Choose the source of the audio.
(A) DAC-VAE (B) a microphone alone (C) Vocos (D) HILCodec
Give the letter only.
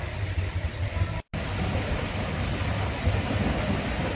B